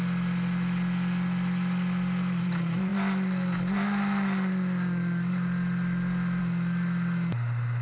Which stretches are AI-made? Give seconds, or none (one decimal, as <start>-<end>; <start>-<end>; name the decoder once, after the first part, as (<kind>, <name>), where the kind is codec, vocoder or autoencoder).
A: none